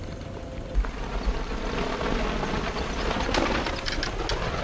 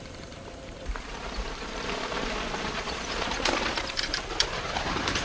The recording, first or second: first